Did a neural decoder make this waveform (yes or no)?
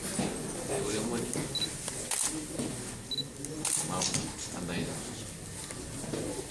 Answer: no